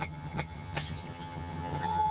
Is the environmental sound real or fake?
fake